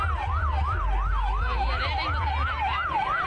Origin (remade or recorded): recorded